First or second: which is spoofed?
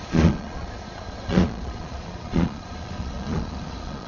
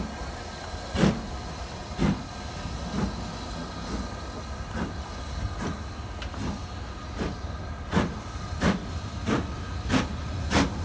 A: first